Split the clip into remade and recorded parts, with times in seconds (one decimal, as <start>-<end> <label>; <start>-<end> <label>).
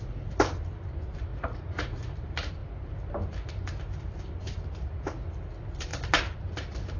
0.0-1.3 recorded; 1.3-2.1 remade; 2.1-7.0 recorded